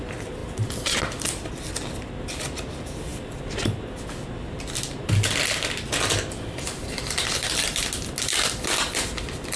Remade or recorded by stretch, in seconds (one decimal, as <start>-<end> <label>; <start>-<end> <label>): 0.0-9.6 recorded